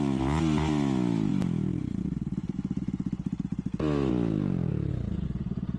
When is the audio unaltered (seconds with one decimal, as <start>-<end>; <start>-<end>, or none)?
0.0-5.8